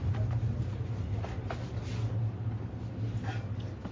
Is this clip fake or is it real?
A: real